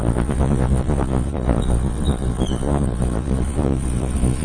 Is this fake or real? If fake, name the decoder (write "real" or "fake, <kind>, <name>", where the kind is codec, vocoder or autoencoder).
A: fake, vocoder, Vocos